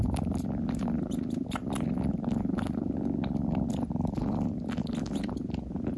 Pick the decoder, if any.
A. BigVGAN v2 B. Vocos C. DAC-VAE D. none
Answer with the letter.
D